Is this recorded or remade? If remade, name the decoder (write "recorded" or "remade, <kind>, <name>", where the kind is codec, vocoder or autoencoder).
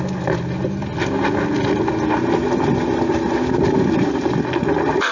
recorded